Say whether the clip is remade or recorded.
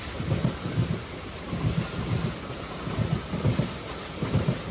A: recorded